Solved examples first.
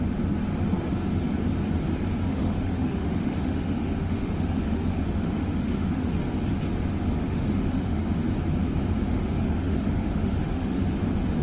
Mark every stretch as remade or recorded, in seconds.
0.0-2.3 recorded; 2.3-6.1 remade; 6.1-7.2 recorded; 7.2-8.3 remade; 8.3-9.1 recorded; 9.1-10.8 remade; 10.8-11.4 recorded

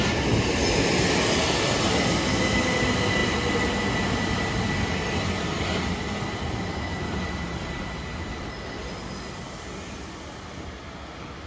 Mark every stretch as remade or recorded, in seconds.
0.0-11.5 recorded

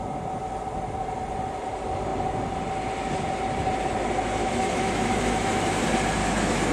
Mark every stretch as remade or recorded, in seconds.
0.0-4.4 recorded; 4.4-5.8 remade; 5.8-6.2 recorded; 6.2-6.7 remade